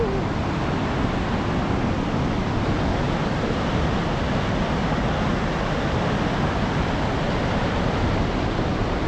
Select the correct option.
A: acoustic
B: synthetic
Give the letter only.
A